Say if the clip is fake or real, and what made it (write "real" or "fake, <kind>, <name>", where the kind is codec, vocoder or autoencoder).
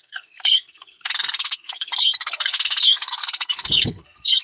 fake, codec, SNAC